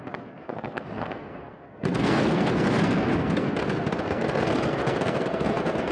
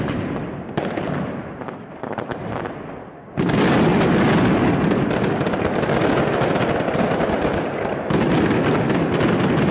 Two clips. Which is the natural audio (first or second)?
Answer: second